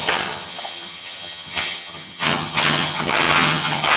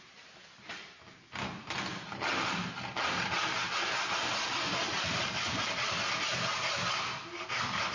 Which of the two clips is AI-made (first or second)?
first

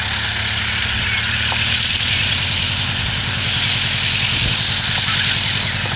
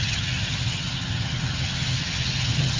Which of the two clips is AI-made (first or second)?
second